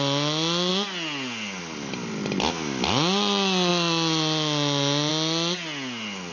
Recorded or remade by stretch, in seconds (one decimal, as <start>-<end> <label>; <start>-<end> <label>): 0.0-6.3 recorded